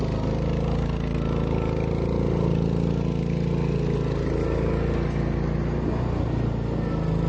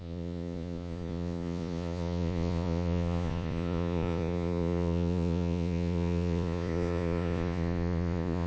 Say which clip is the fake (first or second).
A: second